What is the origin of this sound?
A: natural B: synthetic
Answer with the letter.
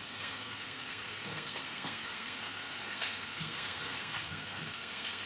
B